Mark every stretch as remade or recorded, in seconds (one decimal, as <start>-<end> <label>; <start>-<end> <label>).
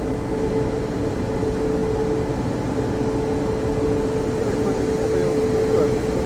0.0-6.3 recorded